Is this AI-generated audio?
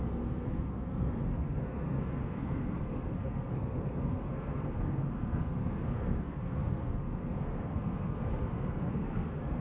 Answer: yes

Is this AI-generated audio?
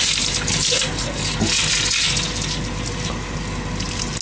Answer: no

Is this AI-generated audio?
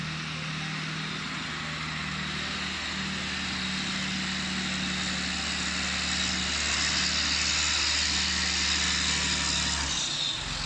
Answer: no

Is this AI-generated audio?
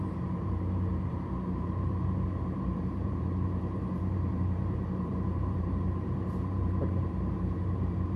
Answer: yes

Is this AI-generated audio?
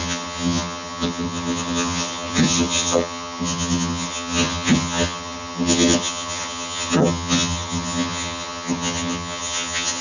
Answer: yes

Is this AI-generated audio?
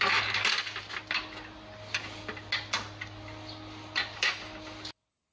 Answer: no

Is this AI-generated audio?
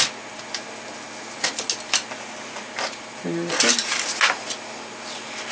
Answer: no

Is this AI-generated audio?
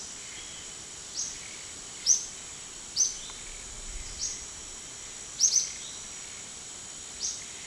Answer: no